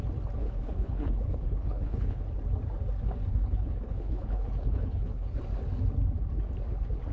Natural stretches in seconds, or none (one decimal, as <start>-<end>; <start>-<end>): 0.0-0.4; 2.2-3.3; 5.4-7.1